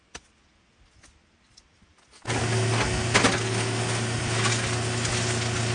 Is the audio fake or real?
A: real